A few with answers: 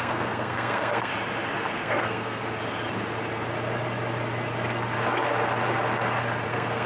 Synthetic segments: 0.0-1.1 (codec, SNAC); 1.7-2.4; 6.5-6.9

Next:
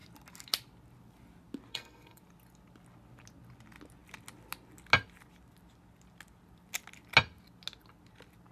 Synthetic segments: 1.7-2.2 (codec, SNAC)